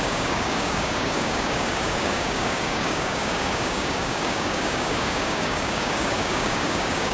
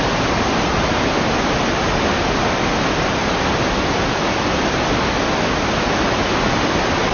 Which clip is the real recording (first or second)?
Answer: second